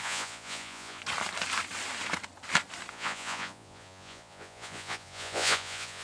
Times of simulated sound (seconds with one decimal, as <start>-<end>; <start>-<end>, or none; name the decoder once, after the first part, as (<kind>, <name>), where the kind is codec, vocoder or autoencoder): 0.0-1.0 (vocoder, Vocos); 2.9-6.0